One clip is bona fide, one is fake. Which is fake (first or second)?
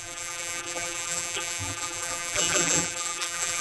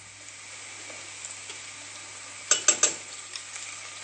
first